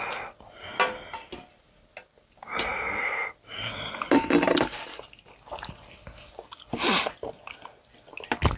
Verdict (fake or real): real